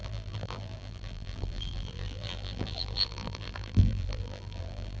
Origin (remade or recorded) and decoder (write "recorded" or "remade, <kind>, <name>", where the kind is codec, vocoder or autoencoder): remade, vocoder, BigVGAN v2